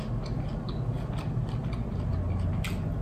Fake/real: real